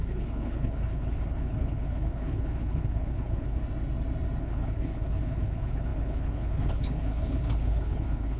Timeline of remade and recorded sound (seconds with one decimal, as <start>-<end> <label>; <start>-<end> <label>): 0.0-3.6 remade; 3.6-4.4 recorded; 4.4-8.4 remade